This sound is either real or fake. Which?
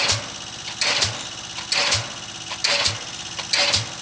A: real